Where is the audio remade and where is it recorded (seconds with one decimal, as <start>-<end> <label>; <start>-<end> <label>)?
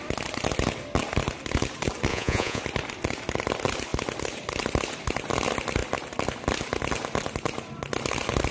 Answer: 0.0-2.1 recorded; 2.1-2.6 remade; 2.6-8.5 recorded